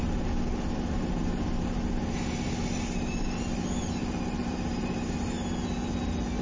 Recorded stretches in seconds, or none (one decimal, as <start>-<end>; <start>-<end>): 0.0-4.4; 5.1-6.4